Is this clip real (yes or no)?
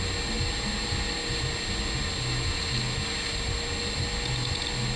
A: yes